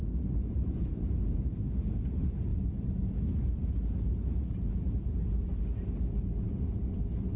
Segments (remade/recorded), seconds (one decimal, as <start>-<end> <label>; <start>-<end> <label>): 0.0-7.4 recorded